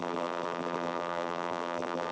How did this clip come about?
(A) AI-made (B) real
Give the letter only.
A